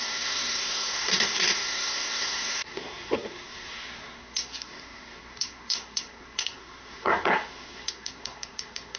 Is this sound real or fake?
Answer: fake